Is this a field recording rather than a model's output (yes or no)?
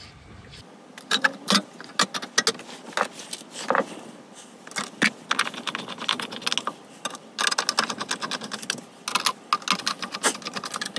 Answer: yes